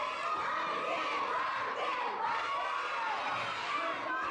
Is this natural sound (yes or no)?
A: yes